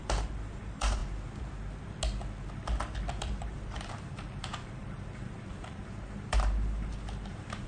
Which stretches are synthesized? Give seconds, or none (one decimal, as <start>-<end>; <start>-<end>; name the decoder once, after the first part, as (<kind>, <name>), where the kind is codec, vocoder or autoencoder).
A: 0.0-1.0 (vocoder, BigVGAN v2); 3.4-7.7